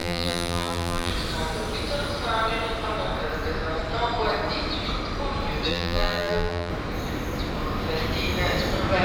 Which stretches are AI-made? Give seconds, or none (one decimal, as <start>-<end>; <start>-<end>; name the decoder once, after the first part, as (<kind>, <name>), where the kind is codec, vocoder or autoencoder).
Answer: 0.0-1.1 (vocoder, BigVGAN v2); 5.7-6.7